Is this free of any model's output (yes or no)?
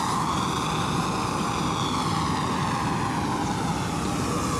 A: yes